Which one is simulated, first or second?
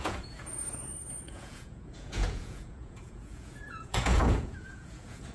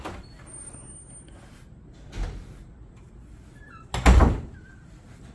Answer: first